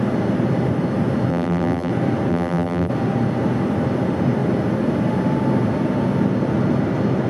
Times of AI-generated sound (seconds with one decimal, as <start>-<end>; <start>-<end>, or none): 1.3-1.9; 2.3-2.9